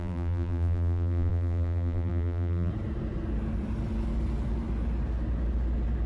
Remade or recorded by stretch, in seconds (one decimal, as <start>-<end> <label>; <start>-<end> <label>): 0.0-2.7 remade; 2.7-6.1 recorded